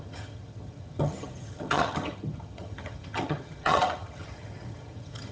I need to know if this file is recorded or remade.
remade